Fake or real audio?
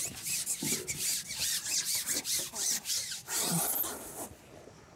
real